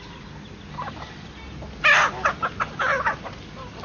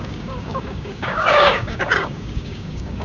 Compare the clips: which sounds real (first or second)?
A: first